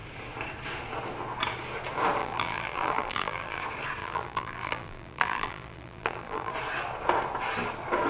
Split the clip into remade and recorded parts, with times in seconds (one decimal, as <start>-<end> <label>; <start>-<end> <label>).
0.0-2.2 recorded; 2.2-3.6 remade; 3.6-4.0 recorded; 4.0-6.5 remade; 6.5-8.1 recorded